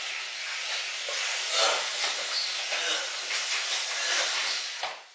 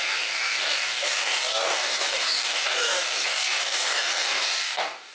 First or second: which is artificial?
second